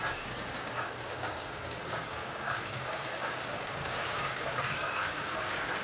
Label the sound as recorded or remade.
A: remade